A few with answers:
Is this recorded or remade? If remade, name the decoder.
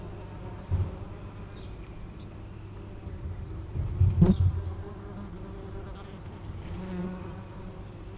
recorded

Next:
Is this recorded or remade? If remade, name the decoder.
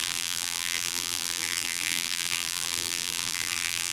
remade, vocoder, BigVGAN v2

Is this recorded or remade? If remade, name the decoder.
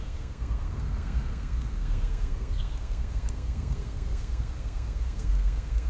remade, codec, SNAC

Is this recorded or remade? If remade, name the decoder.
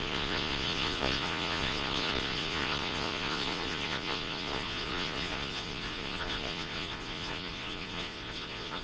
remade, vocoder, Vocos